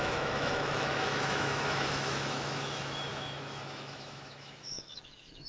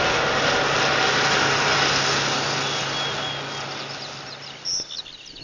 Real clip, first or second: second